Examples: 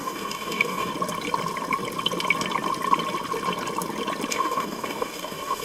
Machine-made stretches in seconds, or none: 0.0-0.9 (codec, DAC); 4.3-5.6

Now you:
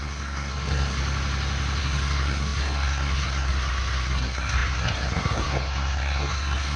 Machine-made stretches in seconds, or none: 0.0-1.0 (codec, SNAC); 1.8-6.8

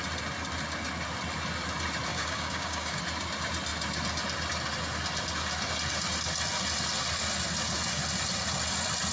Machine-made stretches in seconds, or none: 2.1-3.0 (codec, DAC)

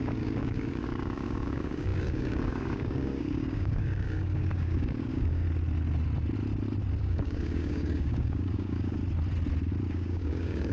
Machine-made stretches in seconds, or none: 0.0-5.4 (codec, DAC); 7.0-9.0; 9.9-10.7